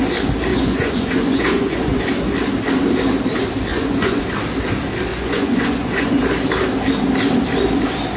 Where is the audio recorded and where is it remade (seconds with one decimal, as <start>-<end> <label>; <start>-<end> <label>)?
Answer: 0.0-0.5 recorded; 0.5-2.0 remade; 2.0-3.7 recorded; 3.7-4.2 remade; 4.2-5.1 recorded; 5.1-6.2 remade; 6.2-8.2 recorded